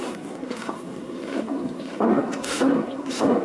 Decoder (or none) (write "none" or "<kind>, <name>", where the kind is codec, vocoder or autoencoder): codec, SNAC